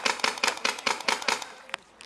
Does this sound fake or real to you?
real